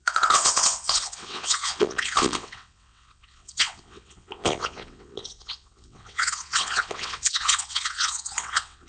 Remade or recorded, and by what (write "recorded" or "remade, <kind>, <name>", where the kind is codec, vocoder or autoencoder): remade, vocoder, WaveNeXt